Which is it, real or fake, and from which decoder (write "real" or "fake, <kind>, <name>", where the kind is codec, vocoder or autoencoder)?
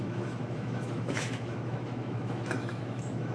fake, autoencoder, DAC-VAE